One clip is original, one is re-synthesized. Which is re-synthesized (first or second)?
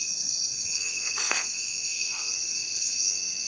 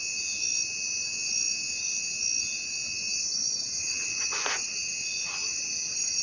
first